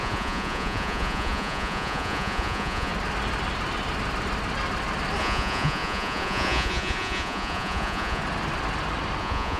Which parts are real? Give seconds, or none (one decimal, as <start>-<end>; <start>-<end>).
2.9-5.2; 8.2-9.2